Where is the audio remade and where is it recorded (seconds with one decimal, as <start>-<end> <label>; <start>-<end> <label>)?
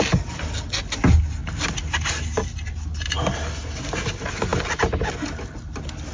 0.0-6.1 recorded